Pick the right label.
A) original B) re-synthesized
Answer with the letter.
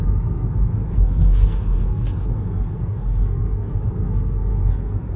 B